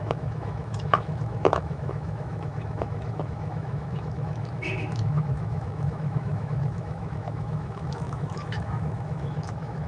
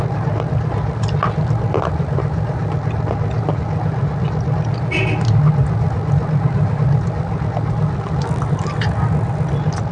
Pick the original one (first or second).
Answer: second